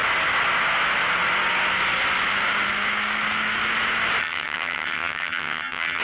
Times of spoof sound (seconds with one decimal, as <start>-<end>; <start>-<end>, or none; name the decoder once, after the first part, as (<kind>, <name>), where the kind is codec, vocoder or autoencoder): 4.2-6.0 (vocoder, HiFi-GAN)